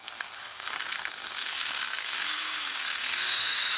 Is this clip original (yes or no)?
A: no